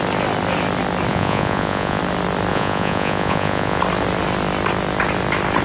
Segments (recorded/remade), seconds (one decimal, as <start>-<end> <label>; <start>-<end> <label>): 0.0-1.1 recorded; 1.1-2.0 remade; 2.0-2.5 recorded; 2.5-3.8 remade; 3.8-5.6 recorded